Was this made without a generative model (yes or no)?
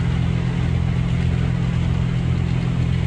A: yes